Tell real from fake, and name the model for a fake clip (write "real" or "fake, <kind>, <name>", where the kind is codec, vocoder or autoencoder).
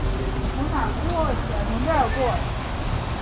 real